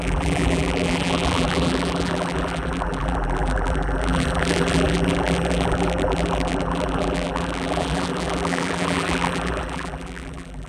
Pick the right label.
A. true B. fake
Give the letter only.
B